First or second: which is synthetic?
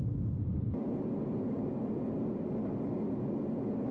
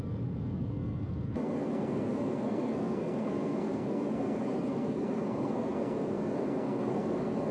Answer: second